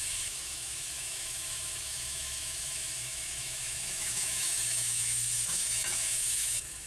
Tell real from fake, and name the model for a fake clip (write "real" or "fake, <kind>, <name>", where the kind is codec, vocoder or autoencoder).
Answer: fake, autoencoder, DAC-VAE